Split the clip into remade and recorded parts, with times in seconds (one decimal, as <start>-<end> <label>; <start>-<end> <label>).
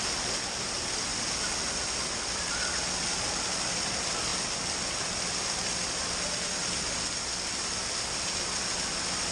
0.0-1.1 recorded; 1.1-2.7 remade; 2.7-9.3 recorded